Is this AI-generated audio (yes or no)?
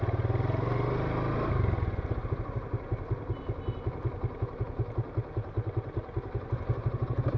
no